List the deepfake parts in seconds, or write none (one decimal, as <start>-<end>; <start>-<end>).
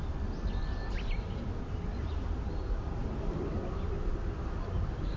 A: none